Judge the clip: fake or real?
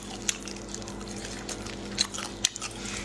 real